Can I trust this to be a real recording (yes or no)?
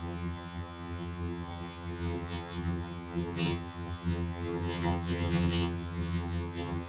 no